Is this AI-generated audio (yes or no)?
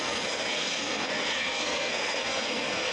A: yes